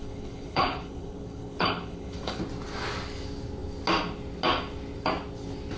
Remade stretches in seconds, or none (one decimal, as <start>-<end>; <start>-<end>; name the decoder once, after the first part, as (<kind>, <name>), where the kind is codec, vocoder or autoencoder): 0.0-2.4 (codec, HILCodec)